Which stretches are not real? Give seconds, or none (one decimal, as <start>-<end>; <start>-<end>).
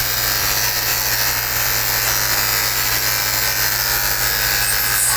none